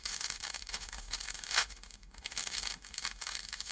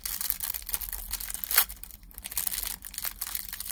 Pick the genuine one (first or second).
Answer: second